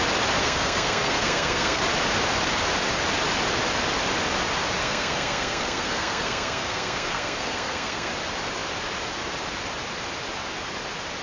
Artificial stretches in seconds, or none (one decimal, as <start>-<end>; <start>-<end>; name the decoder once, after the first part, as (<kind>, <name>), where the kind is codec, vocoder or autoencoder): 0.4-1.8 (codec, SNAC); 4.8-8.1